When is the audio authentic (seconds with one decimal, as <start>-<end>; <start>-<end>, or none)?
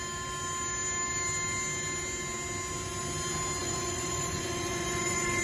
0.0-3.6